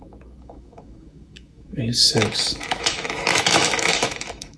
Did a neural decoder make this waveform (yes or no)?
yes